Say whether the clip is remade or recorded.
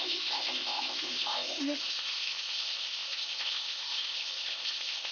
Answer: remade